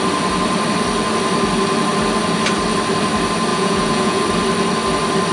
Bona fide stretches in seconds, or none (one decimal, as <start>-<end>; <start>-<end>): 0.0-3.5; 4.2-5.3